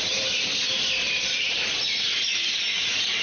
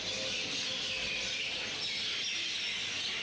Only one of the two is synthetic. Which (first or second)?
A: first